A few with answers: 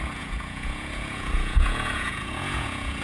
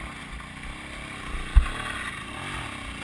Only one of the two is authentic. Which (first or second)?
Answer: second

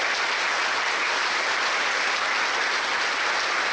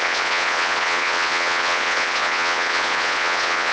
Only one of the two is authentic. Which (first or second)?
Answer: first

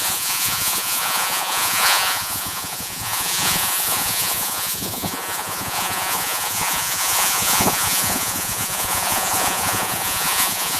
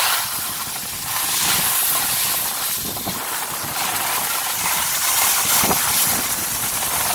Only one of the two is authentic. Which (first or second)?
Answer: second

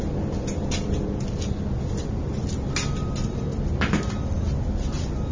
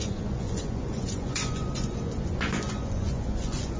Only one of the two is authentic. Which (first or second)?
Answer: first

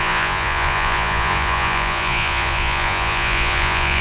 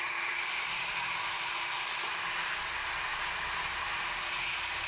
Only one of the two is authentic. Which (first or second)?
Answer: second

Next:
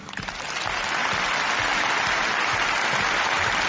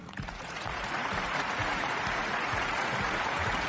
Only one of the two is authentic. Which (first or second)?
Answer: first